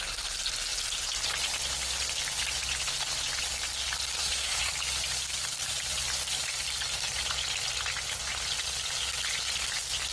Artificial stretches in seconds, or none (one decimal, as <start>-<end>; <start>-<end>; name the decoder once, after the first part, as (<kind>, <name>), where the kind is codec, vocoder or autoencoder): 4.2-4.7 (codec, SNAC)

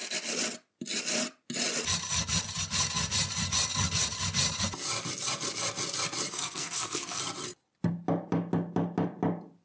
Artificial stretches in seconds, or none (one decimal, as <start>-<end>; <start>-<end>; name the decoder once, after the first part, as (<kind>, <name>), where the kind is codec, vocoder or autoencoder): 6.3-7.2 (codec, SNAC)